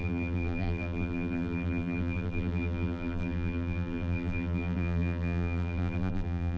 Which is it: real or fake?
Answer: fake